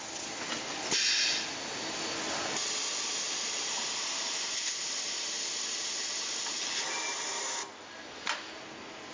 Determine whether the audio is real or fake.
real